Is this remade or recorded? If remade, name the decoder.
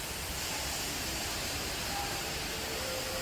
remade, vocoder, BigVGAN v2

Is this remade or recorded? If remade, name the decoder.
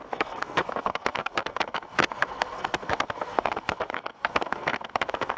remade, codec, SNAC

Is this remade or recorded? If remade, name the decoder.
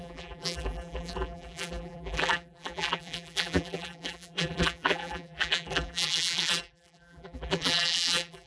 remade, vocoder, BigVGAN v2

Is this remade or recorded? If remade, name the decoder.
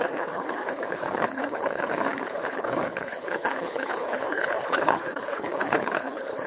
remade, codec, HILCodec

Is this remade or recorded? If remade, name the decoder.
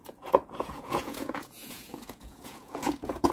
remade, vocoder, Vocos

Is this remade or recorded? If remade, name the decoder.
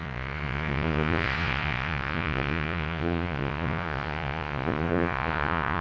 remade, vocoder, Vocos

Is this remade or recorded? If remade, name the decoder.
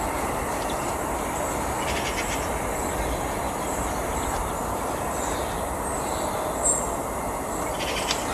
recorded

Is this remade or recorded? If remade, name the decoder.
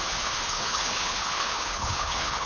remade, codec, HILCodec